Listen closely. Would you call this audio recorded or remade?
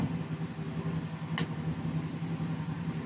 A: recorded